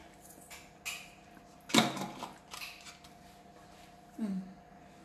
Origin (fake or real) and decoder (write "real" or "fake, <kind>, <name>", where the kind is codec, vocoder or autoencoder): real